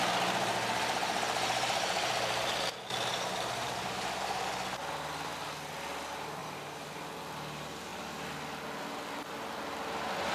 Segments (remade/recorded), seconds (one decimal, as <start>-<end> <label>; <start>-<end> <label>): 0.0-0.5 recorded; 0.5-4.4 remade; 4.4-6.4 recorded; 6.4-6.9 remade; 6.9-10.3 recorded